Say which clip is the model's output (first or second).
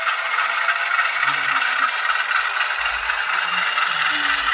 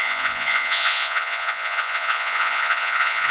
second